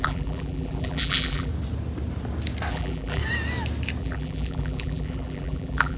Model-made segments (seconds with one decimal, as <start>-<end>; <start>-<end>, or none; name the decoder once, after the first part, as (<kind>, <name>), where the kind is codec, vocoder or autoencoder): 0.0-1.5 (vocoder, BigVGAN v2); 2.7-3.2; 4.0-6.0